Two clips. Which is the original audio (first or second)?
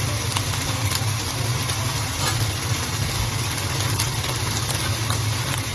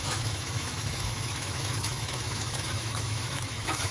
first